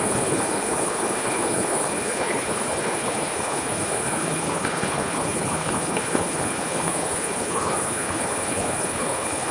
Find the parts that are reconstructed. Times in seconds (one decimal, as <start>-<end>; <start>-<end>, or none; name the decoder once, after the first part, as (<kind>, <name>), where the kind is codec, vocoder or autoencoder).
0.0-9.5 (codec, HILCodec)